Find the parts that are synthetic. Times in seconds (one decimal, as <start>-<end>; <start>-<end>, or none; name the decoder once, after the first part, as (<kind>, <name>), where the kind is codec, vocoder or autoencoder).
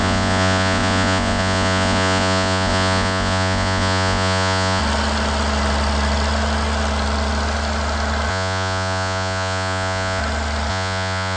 0.0-4.8 (vocoder, Vocos); 8.3-10.2; 10.7-11.4